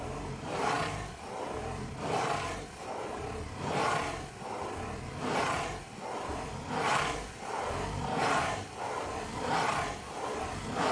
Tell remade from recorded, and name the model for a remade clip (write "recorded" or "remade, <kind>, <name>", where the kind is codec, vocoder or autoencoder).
remade, vocoder, BigVGAN v2